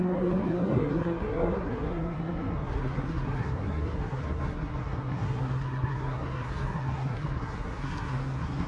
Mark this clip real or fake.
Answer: fake